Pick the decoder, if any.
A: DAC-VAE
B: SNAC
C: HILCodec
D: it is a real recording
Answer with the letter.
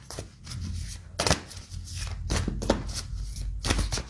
D